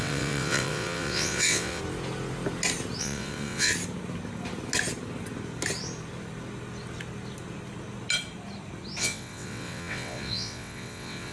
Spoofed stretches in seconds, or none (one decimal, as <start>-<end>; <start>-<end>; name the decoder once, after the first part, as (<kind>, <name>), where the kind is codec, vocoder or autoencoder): 0.0-1.8 (vocoder, WaveNeXt); 3.0-3.7; 9.0-11.3